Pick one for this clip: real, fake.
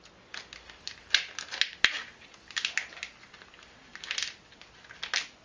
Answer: real